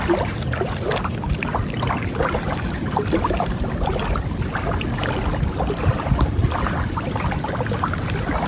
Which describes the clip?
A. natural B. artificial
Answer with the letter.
A